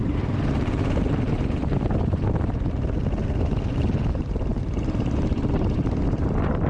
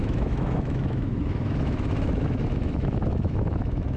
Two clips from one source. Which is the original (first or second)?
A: first